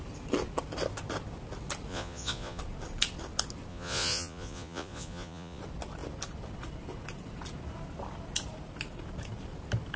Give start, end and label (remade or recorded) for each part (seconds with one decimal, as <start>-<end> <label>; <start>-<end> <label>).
0.0-1.9 recorded; 1.9-2.6 remade; 2.6-3.7 recorded; 3.7-5.6 remade; 5.6-10.0 recorded